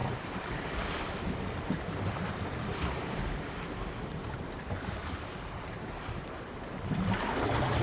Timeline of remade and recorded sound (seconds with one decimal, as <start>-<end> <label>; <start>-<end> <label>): 0.0-1.0 remade; 1.0-2.3 recorded; 2.3-7.0 remade; 7.0-7.8 recorded